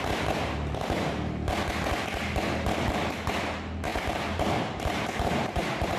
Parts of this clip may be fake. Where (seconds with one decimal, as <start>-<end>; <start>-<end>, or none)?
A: 3.9-6.0